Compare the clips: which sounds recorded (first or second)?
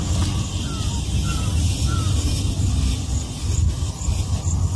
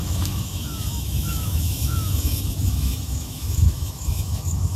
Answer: first